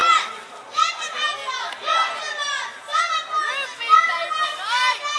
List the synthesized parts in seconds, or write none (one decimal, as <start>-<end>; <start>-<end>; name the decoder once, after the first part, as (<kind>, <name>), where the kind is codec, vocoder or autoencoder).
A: none

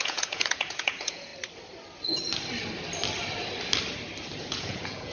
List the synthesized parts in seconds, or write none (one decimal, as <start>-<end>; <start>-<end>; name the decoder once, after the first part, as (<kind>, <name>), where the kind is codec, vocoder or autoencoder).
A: 0.0-1.3 (vocoder, Vocos); 4.4-5.1

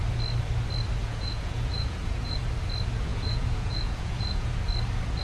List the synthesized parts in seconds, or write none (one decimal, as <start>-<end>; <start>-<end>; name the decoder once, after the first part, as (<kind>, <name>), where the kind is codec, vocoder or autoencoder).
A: 1.0-2.4 (vocoder, Vocos); 3.1-4.5

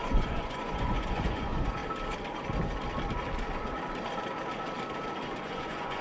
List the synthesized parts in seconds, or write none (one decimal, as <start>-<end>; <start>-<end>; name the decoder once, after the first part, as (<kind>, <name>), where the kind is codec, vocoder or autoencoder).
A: 0.0-1.8 (vocoder, Vocos); 5.4-6.0

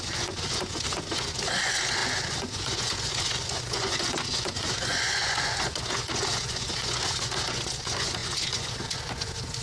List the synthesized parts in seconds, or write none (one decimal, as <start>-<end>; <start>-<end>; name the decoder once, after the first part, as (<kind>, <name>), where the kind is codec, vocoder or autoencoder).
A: 0.0-9.6 (vocoder, Vocos)